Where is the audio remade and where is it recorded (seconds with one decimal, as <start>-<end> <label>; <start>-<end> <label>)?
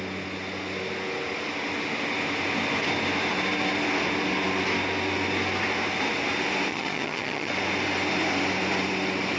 0.0-6.7 recorded; 6.7-7.5 remade; 7.5-9.4 recorded